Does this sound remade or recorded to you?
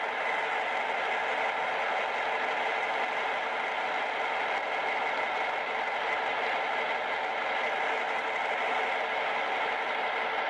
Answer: recorded